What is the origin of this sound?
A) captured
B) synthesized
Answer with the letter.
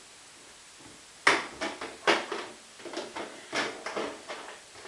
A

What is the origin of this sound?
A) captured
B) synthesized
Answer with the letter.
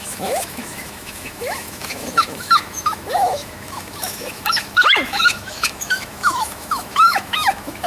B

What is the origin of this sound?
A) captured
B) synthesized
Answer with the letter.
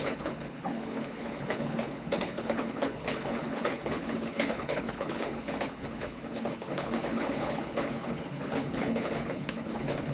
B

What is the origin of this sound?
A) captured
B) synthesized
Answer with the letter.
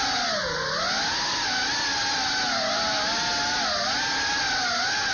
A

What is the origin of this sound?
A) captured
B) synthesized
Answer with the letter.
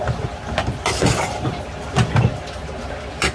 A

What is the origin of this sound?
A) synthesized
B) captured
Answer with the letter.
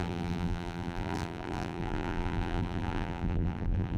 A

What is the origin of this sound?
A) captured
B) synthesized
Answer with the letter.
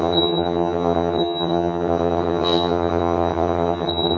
B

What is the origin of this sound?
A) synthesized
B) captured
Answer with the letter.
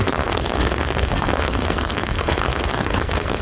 A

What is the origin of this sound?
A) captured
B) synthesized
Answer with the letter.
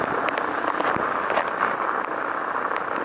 A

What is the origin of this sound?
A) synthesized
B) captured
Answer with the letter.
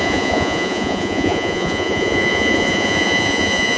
A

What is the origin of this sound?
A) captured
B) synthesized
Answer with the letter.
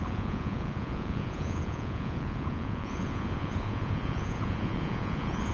B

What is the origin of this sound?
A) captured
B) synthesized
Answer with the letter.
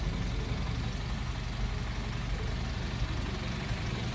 A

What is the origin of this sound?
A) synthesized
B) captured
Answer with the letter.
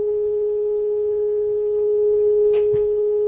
A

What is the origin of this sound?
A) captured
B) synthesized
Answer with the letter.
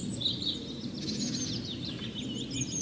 A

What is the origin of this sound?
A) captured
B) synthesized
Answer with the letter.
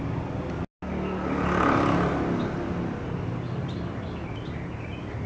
A